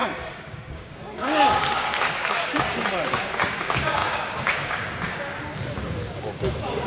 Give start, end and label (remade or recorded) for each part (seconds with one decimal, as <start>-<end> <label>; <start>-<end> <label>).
0.0-5.3 remade; 5.3-6.5 recorded; 6.5-6.9 remade